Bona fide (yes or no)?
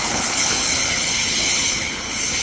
no